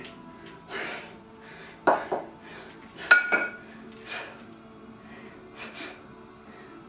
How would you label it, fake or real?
real